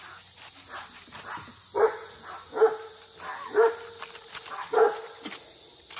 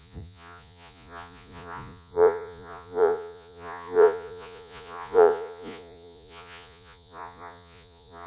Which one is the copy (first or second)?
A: second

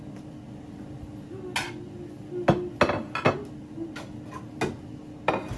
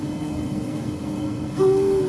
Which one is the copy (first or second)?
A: second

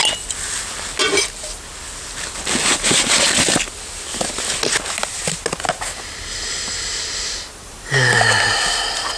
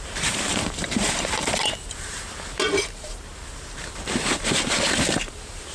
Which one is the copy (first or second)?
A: second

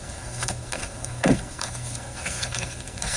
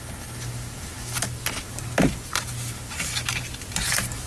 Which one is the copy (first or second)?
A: first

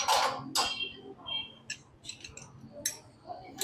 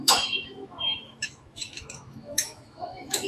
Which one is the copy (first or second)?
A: second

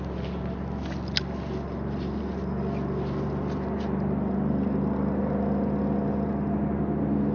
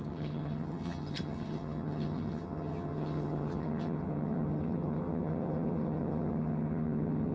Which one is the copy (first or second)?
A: second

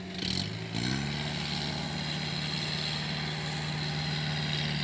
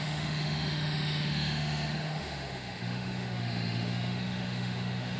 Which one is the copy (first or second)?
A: second